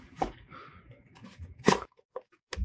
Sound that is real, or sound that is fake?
fake